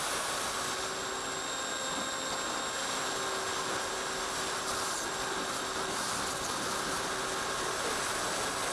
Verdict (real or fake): real